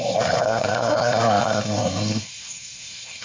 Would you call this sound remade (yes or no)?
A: yes